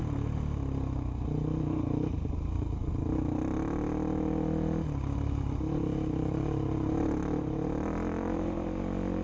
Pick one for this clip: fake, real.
real